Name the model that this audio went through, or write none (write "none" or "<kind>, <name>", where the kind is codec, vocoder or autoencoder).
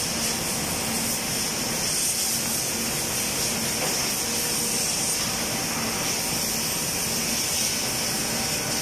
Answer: none